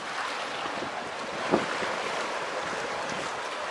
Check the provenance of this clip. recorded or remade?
recorded